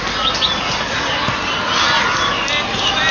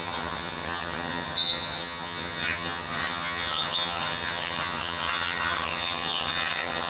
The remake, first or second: second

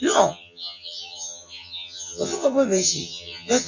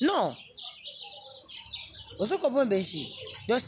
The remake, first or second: first